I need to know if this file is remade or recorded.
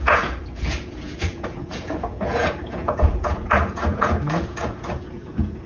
remade